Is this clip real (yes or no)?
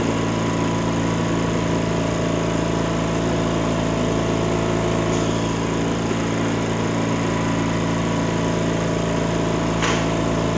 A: yes